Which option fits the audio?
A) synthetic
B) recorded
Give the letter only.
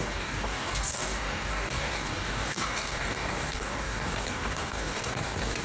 A